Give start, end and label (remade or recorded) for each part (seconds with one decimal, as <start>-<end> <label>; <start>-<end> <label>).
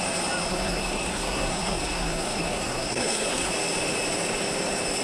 0.0-0.5 recorded; 0.5-3.5 remade; 3.5-5.0 recorded